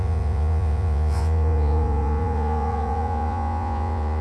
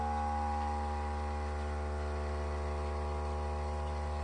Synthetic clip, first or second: first